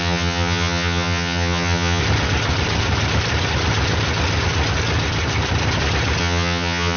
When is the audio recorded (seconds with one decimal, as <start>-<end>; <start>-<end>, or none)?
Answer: 2.0-6.2